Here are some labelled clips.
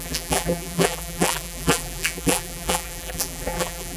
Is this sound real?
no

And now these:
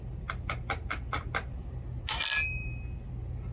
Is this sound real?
yes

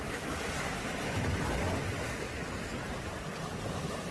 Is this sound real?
yes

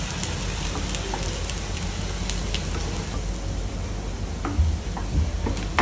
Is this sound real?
yes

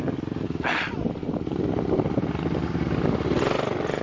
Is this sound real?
yes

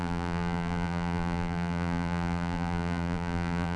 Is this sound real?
no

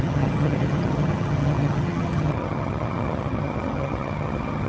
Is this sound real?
no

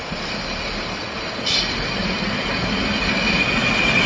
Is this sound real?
yes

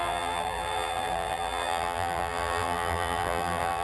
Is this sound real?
no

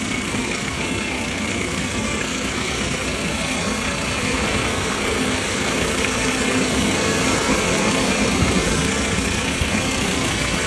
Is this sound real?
no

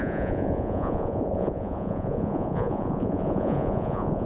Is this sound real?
no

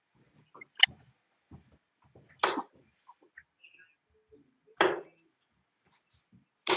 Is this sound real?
yes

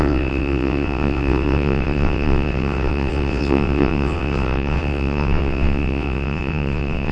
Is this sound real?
no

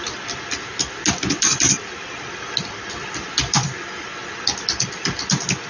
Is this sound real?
yes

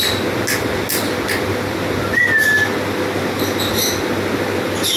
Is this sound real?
yes